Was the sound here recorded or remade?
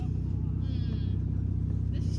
recorded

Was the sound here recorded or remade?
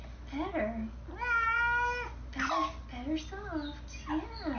recorded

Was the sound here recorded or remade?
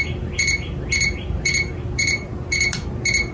recorded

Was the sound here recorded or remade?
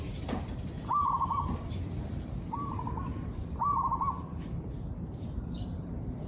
remade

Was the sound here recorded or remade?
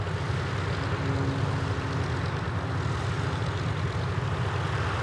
recorded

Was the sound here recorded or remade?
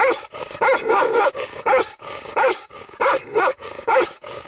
remade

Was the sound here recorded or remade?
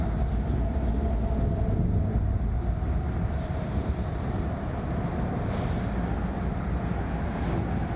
recorded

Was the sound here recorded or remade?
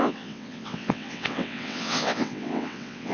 remade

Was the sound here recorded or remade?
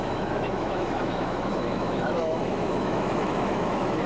remade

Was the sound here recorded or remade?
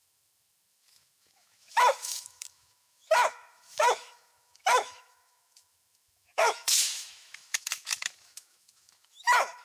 remade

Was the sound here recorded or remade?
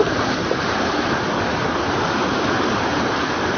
recorded